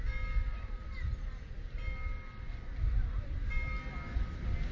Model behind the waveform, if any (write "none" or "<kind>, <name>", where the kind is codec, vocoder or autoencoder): none